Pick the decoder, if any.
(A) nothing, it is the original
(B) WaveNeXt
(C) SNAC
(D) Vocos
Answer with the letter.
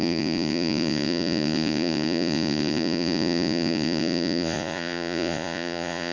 D